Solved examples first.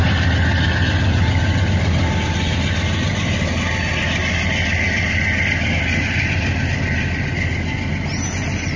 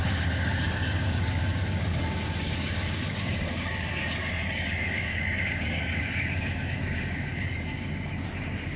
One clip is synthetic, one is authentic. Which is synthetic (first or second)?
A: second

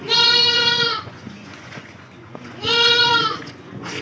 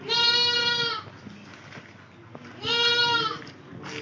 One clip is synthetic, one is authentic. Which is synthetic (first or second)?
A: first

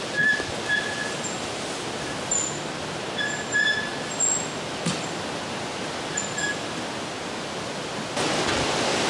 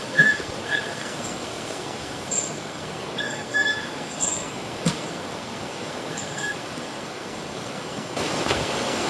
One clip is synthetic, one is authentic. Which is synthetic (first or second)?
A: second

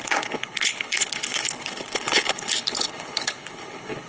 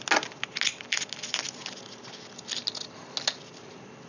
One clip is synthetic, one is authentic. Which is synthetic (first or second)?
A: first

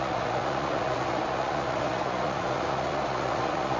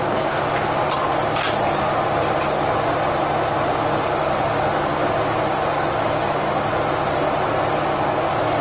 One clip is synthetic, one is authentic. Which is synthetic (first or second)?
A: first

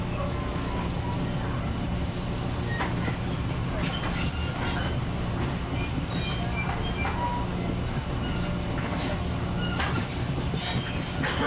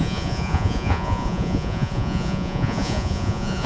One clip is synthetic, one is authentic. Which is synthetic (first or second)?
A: second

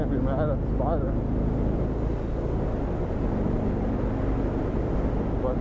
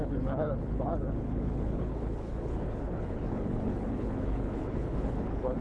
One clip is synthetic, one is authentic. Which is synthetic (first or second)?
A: second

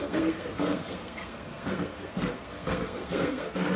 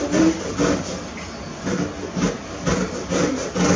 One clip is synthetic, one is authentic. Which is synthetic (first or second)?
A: first